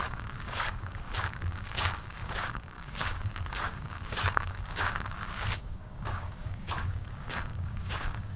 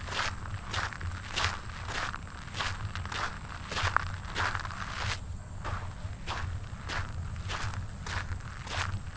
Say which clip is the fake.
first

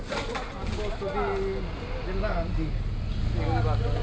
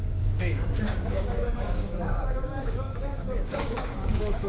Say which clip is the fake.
second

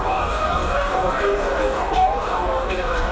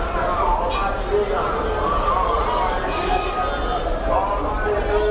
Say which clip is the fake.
first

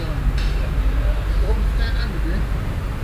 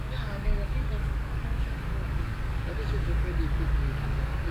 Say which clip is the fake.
second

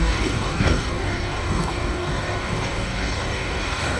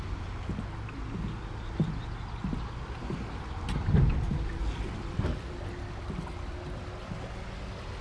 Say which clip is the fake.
first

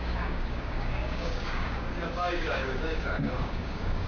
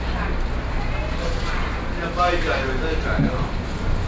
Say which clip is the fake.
first